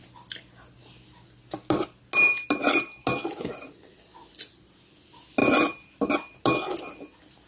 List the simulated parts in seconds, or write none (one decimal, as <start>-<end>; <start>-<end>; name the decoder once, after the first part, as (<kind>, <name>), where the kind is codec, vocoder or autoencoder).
none